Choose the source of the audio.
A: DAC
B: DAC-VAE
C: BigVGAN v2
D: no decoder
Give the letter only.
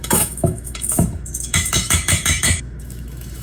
B